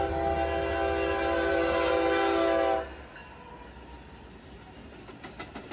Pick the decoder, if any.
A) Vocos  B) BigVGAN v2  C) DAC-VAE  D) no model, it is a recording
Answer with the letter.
D